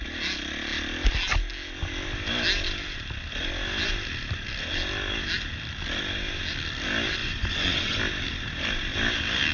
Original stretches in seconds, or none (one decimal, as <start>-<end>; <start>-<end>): 0.0-7.2; 8.0-9.5